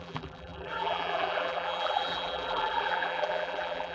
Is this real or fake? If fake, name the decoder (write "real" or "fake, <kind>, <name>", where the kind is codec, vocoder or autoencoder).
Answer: fake, vocoder, BigVGAN v2